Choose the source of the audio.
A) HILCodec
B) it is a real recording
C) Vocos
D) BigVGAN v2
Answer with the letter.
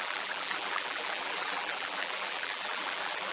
D